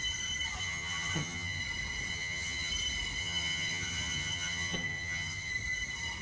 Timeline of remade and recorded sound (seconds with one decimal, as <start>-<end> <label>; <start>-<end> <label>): 0.0-0.6 recorded; 0.6-1.6 remade; 1.6-2.1 recorded; 2.1-2.7 remade; 2.7-3.2 recorded; 3.2-5.5 remade; 5.5-6.2 recorded